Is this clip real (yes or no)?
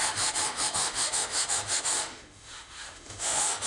no